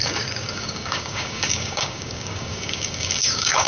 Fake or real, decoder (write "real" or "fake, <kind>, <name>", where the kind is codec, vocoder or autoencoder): fake, codec, DAC